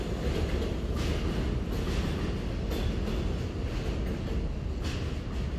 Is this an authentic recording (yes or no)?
yes